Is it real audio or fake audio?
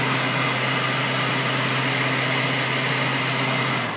real